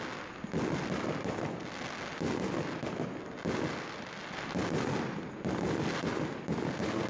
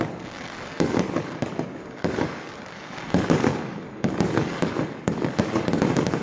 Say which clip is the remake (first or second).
second